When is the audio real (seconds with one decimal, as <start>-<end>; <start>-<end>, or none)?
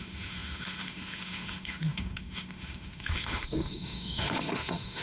none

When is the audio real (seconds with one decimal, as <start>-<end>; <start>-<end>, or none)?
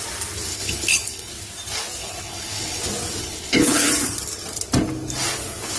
0.0-0.5; 1.3-2.0; 2.8-3.2; 3.9-5.8